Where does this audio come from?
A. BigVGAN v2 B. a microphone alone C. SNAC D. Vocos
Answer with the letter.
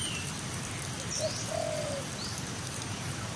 B